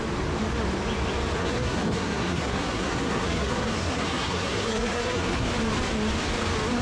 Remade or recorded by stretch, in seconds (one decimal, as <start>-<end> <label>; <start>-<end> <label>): 0.0-1.4 recorded; 1.4-5.5 remade; 5.5-6.8 recorded